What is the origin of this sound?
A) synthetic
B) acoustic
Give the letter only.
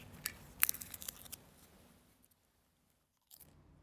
B